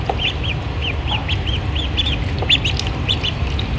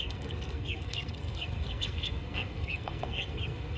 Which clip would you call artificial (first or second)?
second